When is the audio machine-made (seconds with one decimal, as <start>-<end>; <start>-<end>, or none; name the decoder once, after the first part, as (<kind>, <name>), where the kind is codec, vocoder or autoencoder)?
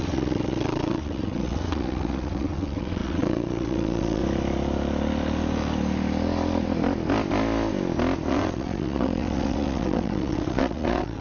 0.0-4.2 (vocoder, WaveNeXt); 8.3-11.2